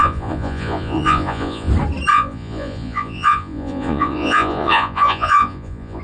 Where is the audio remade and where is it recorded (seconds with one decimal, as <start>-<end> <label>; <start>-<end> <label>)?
0.0-1.7 remade; 1.7-2.1 recorded; 2.1-6.0 remade